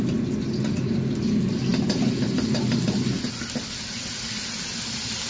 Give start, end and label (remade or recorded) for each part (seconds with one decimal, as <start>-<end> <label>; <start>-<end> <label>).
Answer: 0.0-5.3 recorded